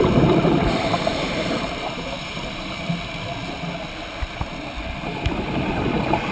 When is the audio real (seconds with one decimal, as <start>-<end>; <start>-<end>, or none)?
0.0-1.1; 2.8-6.3